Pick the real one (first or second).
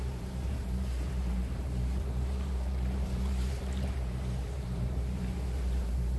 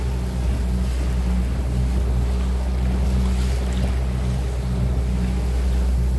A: second